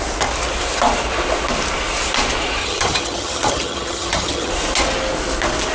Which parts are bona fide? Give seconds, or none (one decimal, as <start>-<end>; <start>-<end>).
0.0-2.6; 4.5-5.7